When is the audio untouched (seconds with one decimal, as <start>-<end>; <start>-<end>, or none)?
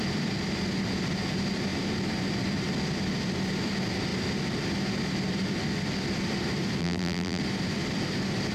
0.0-6.8; 7.4-8.5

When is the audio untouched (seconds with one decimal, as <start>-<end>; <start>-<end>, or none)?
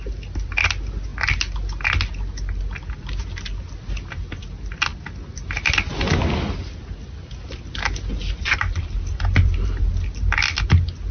0.0-8.1; 9.9-11.1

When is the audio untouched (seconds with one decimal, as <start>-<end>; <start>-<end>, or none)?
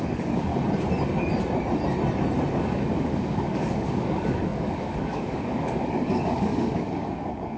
0.5-2.5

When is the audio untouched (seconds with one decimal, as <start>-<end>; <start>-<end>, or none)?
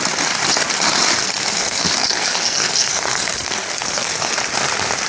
0.0-1.2; 4.3-5.1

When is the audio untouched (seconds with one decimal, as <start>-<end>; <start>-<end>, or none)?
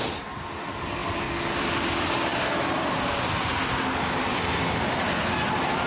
0.0-5.9